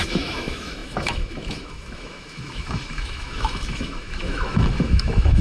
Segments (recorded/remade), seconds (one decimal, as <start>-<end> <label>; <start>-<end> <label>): 0.0-5.4 remade